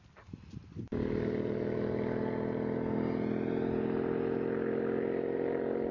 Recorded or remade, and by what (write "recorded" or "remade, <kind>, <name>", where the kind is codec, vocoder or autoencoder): recorded